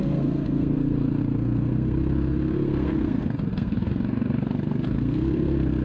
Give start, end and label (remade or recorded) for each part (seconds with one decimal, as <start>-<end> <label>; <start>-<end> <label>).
0.0-5.8 remade